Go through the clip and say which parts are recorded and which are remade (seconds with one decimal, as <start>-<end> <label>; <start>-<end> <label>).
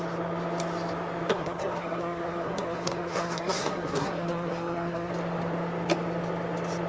0.0-1.3 recorded; 1.3-5.1 remade; 5.1-6.9 recorded